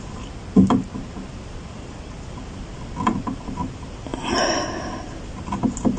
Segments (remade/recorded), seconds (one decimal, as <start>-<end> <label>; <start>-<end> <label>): 0.0-6.0 recorded

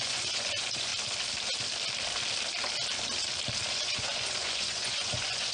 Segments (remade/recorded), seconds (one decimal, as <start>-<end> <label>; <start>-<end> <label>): 0.0-0.9 remade; 0.9-3.7 recorded; 3.7-5.5 remade